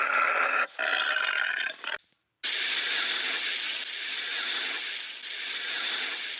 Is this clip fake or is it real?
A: real